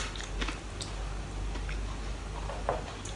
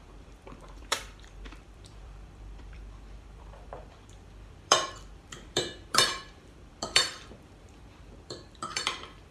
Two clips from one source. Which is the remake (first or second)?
second